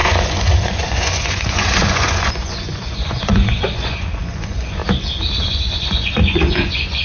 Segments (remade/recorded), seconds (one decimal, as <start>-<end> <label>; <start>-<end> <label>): 0.0-4.8 remade; 4.8-5.5 recorded; 5.5-7.0 remade